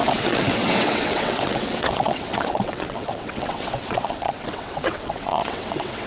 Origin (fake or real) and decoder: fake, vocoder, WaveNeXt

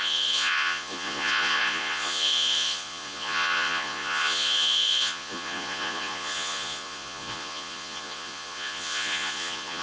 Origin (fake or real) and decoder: fake, vocoder, Vocos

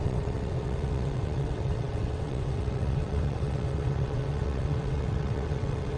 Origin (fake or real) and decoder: fake, vocoder, WaveNeXt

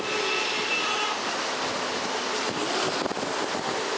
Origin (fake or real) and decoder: real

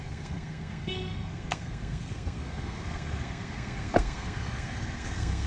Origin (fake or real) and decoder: fake, codec, SNAC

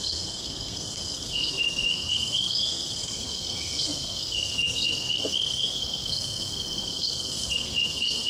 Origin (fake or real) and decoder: fake, codec, SNAC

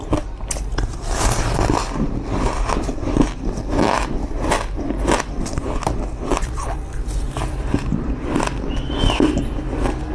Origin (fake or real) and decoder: real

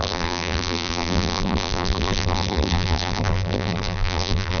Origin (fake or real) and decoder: fake, vocoder, BigVGAN v2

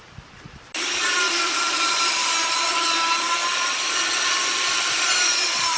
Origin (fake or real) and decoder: real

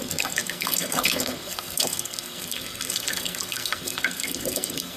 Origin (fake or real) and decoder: fake, codec, SNAC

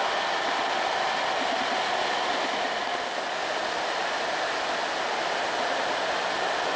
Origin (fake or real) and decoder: real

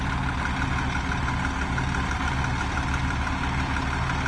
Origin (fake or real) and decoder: real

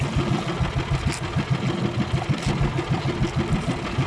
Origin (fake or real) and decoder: real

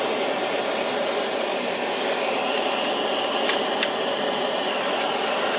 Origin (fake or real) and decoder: real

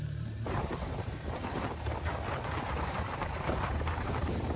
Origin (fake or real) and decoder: fake, vocoder, BigVGAN v2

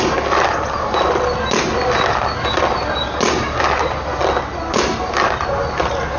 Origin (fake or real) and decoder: real